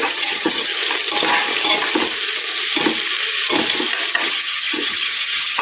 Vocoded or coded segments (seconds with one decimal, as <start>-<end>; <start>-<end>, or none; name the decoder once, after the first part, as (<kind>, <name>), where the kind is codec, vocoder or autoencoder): 0.0-0.7 (vocoder, HiFi-GAN); 4.1-5.6